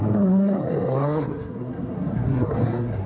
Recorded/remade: remade